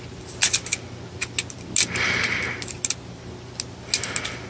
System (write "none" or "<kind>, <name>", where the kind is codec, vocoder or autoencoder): none